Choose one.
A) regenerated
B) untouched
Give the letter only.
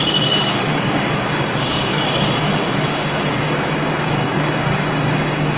A